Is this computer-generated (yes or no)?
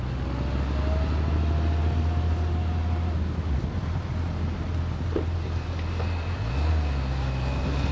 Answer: no